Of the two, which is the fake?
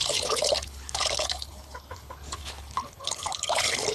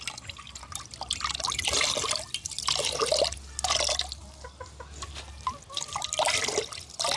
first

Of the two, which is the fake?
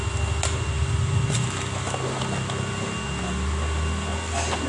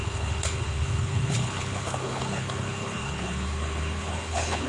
second